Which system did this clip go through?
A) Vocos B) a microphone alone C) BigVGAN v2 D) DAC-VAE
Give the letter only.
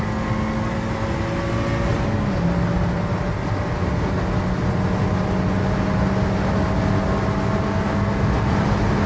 B